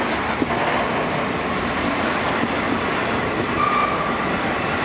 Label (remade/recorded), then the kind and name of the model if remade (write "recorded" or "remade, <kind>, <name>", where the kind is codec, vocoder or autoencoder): recorded